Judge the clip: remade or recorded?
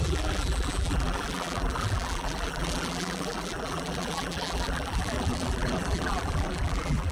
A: remade